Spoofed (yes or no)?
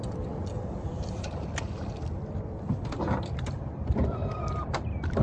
yes